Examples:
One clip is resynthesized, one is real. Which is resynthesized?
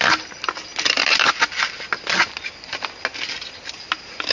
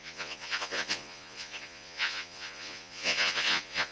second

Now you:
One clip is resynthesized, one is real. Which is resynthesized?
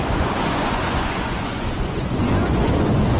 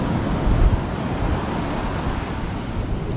first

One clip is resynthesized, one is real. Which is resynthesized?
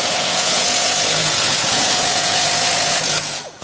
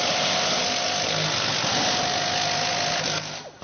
first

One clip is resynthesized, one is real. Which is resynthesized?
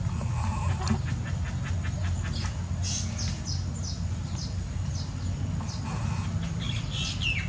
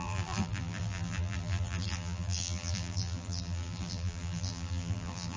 second